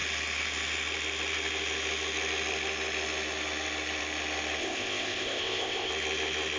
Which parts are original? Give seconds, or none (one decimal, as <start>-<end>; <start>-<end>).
0.0-4.6; 5.9-6.6

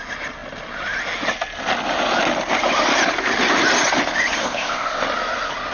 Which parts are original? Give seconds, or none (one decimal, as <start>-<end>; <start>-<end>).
0.0-4.4; 5.0-5.7

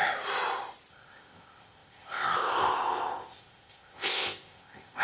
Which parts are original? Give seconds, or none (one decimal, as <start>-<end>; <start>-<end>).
0.0-0.9

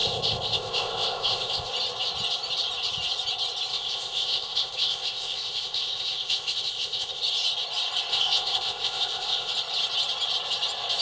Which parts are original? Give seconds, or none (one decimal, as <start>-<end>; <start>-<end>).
1.7-3.7; 7.2-8.1; 9.5-11.0